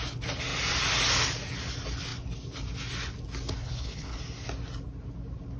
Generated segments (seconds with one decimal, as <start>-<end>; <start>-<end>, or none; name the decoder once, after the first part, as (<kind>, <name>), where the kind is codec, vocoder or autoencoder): 3.6-4.2 (codec, HILCodec)